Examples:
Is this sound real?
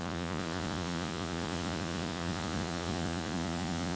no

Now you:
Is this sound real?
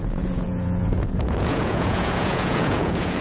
no